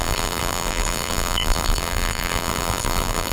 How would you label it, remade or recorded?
remade